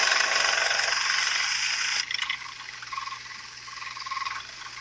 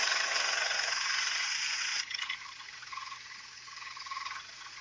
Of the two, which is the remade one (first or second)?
second